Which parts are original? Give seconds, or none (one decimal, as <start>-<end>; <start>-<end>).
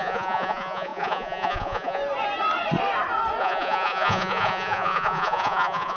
2.0-3.4